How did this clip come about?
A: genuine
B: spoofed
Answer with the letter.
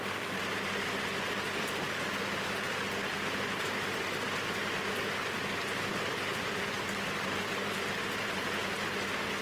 B